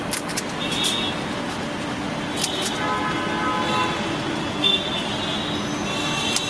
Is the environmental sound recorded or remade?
recorded